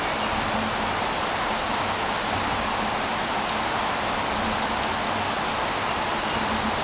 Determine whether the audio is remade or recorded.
recorded